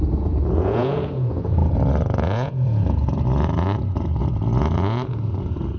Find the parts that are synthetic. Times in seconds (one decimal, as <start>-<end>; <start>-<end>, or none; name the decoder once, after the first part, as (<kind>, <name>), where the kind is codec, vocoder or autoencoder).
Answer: 0.0-5.8 (vocoder, Vocos)